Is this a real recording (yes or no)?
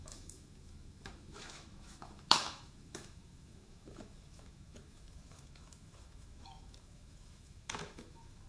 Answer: no